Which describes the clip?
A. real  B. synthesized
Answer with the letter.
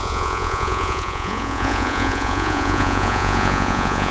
B